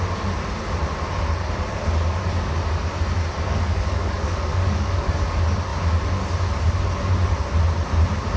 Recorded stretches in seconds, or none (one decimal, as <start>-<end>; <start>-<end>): 0.0-3.5; 5.1-8.4